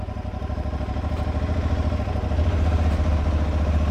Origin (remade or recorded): recorded